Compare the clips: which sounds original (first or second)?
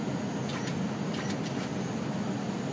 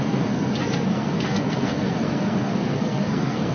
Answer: first